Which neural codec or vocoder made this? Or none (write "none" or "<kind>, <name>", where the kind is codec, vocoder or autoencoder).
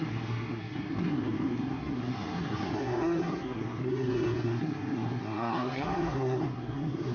codec, SNAC